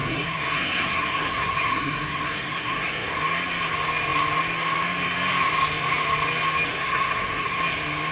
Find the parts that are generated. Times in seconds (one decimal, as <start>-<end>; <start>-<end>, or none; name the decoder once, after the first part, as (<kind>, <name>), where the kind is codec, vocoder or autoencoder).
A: 0.0-3.2 (codec, SNAC); 6.7-7.6